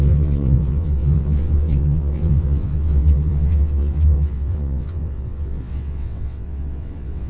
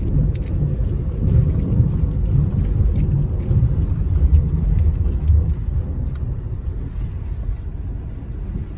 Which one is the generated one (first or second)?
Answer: first